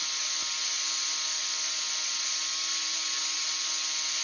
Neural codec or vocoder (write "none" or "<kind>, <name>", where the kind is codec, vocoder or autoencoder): none